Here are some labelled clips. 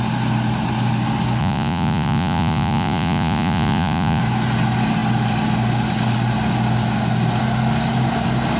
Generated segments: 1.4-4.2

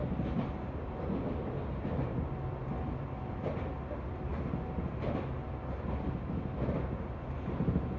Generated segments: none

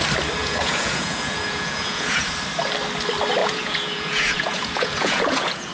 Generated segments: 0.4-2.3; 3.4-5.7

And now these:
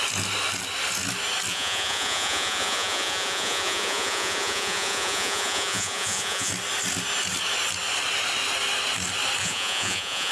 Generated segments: 1.5-6.5; 9.4-10.3

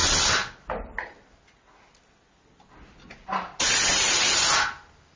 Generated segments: none

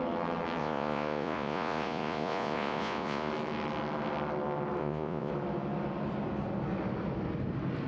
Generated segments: 0.6-3.3; 4.8-5.3